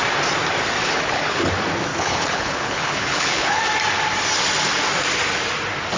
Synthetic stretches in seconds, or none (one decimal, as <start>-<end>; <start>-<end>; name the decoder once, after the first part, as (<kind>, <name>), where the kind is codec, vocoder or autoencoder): 0.8-1.5 (codec, HILCodec); 1.9-3.6

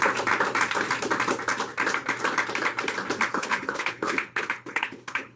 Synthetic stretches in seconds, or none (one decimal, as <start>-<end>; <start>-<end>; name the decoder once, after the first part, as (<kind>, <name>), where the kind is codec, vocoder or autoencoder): 3.3-5.4 (codec, HILCodec)

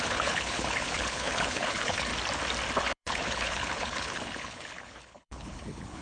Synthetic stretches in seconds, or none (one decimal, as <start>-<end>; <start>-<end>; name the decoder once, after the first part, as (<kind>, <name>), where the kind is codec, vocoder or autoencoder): 0.0-2.1 (codec, HILCodec); 2.8-6.0

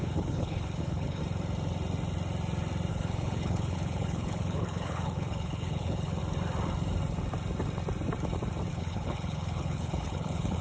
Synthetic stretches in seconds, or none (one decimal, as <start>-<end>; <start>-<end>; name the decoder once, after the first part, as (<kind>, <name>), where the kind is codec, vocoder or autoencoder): 0.0-1.2 (codec, HILCodec); 2.9-6.2; 8.7-10.6

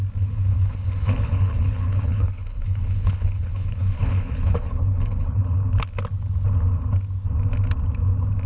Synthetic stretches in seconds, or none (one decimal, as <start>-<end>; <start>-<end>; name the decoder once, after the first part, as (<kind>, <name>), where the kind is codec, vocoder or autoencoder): 0.5-5.4 (codec, HILCodec)